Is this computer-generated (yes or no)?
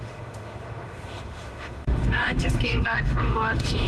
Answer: yes